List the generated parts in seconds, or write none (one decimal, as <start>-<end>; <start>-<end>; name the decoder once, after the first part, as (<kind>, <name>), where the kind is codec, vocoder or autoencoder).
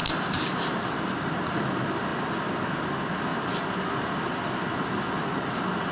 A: 0.0-0.8 (vocoder, BigVGAN v2); 3.3-3.8